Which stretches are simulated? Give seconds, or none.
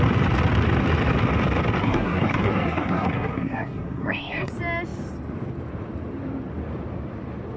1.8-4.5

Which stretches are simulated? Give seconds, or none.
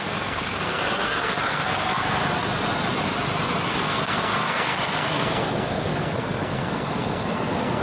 0.0-2.2; 3.7-7.8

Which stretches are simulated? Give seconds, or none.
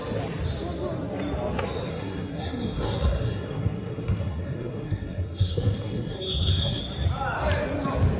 1.9-6.8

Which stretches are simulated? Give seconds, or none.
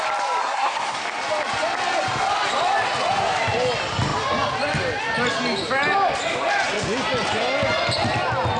0.4-1.0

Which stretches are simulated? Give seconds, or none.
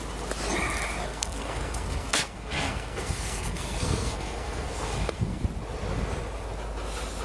1.1-5.4